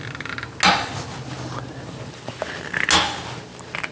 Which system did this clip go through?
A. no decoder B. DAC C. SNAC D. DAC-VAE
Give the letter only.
A